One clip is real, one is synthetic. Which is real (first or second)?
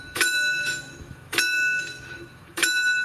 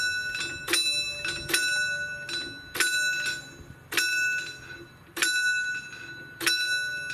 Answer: second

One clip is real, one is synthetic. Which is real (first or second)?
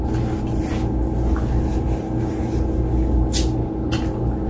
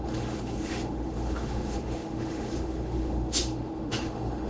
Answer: first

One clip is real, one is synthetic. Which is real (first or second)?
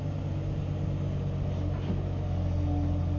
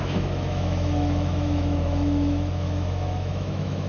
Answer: first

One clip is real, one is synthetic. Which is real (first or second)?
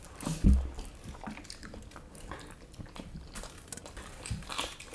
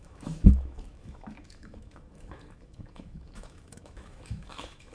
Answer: first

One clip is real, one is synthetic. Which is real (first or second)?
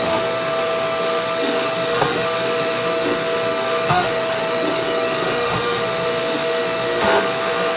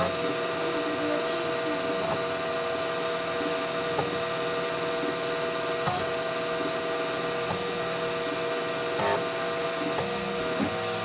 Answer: second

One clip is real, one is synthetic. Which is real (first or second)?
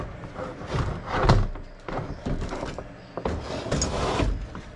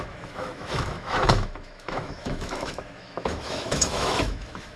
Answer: first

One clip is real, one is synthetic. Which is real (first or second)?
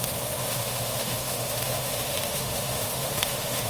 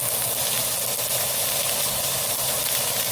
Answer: second